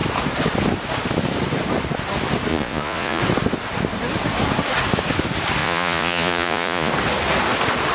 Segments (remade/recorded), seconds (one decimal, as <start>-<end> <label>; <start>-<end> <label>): 0.0-2.5 recorded; 2.5-3.2 remade; 3.2-5.6 recorded; 5.6-6.9 remade; 6.9-7.9 recorded